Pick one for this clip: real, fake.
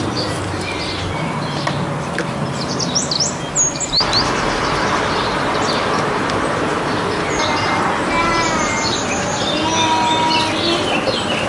real